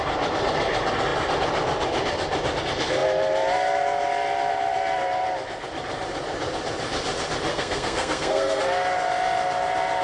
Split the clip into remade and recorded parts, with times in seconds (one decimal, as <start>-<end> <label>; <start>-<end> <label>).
0.0-7.5 recorded; 7.5-8.6 remade; 8.6-10.0 recorded